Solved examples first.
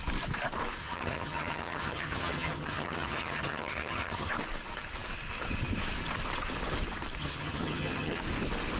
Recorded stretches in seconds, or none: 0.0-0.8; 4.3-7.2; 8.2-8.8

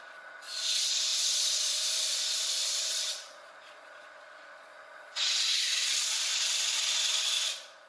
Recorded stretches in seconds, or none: none

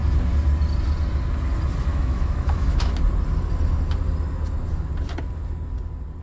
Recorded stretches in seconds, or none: 0.0-1.9; 2.9-6.2

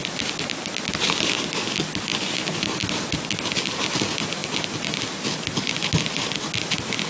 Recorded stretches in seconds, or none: 0.0-7.1

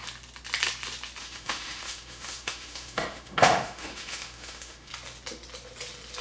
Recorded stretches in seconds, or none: 0.0-1.2; 4.9-6.2